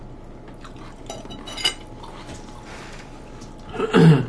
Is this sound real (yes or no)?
yes